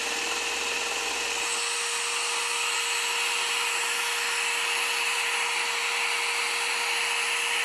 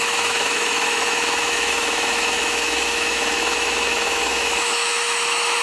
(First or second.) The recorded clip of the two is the first